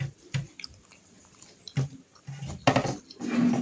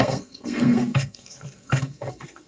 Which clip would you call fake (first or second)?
second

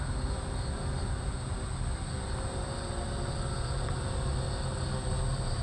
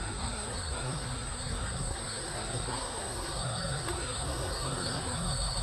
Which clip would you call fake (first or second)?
second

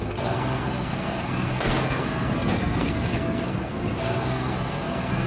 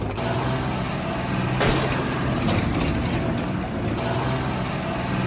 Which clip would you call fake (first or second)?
first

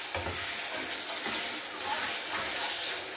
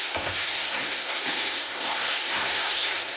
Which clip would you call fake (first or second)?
second